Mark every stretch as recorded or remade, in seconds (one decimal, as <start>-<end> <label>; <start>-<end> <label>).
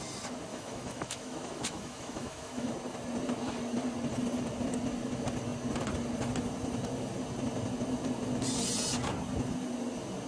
0.0-0.5 recorded; 0.5-2.7 remade; 2.7-10.3 recorded